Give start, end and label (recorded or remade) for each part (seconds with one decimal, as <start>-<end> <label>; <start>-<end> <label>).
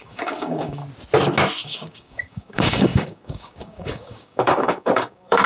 0.0-0.8 remade; 0.8-1.6 recorded; 1.6-5.5 remade